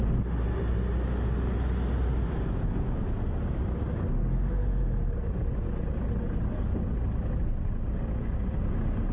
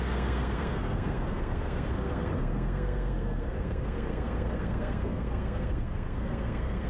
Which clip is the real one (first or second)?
first